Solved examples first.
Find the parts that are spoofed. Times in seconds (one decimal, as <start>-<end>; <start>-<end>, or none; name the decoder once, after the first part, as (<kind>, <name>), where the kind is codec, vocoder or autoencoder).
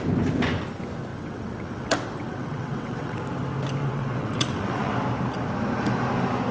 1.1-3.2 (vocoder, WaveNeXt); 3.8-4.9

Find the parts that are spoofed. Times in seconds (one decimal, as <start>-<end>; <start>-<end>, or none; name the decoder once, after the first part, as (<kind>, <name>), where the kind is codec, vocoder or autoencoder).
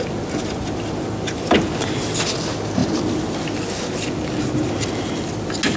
none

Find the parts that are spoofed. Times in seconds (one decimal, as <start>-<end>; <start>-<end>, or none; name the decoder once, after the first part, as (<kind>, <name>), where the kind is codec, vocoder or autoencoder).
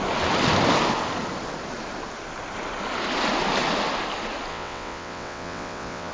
4.5-6.1 (vocoder, WaveNeXt)